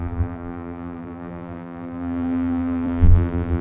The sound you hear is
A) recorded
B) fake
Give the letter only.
B